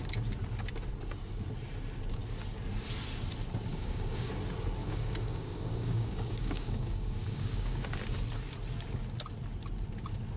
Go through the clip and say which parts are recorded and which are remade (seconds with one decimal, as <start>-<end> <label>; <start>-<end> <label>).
0.0-3.7 recorded; 3.7-4.3 remade; 4.3-4.8 recorded; 4.8-7.8 remade; 7.8-10.4 recorded